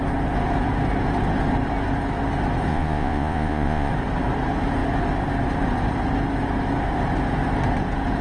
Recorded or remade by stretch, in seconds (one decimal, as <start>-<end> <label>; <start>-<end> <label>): 0.0-2.7 recorded; 2.7-3.9 remade; 3.9-8.2 recorded